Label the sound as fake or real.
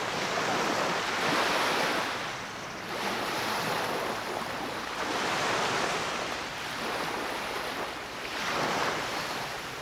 real